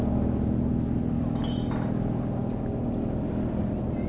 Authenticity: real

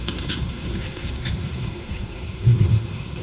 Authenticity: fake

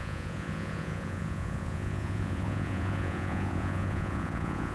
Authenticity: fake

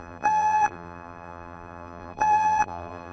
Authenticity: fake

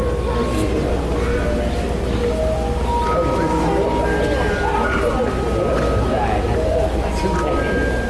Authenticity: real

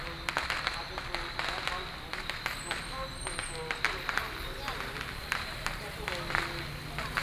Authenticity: real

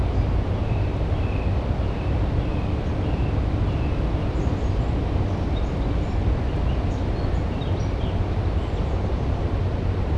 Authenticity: real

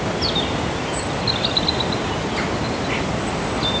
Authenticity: real